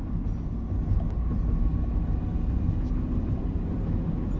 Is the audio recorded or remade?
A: recorded